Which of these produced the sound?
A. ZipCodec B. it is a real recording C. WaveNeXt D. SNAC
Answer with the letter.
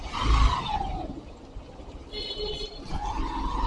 B